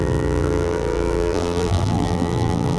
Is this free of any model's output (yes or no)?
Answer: no